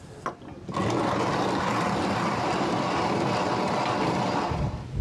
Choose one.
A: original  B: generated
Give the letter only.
B